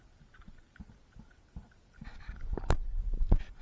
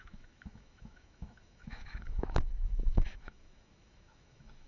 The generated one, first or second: second